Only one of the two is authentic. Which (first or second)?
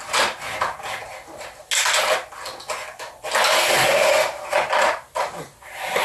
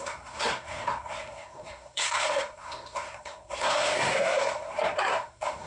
first